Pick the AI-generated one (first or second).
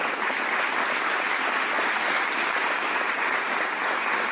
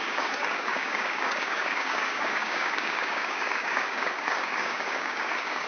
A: second